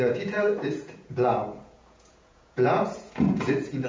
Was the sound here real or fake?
fake